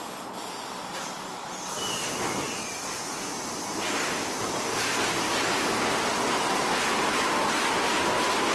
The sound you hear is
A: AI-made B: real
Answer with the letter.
B